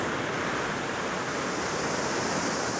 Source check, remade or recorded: recorded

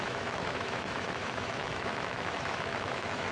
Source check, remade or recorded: remade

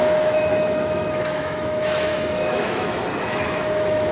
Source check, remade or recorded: remade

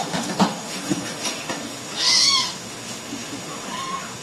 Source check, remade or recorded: remade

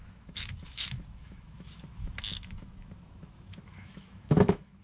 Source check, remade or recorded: remade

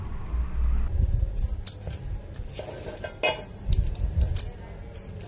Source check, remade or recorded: recorded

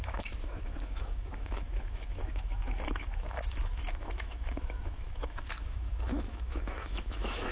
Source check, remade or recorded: remade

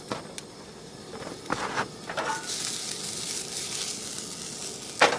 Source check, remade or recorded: recorded